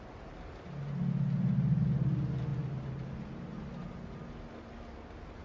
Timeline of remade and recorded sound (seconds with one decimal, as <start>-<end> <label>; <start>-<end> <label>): 0.0-5.4 recorded